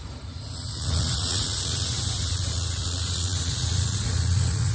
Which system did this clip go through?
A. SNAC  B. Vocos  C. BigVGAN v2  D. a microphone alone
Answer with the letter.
B